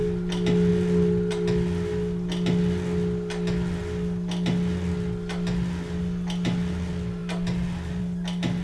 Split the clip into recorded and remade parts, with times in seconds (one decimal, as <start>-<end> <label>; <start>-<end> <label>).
0.0-8.6 recorded